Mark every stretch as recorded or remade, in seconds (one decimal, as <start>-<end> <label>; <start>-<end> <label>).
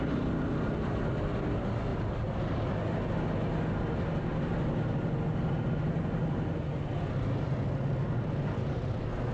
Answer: 0.0-1.9 recorded; 1.9-2.4 remade; 2.4-9.3 recorded